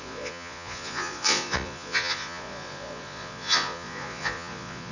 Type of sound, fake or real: fake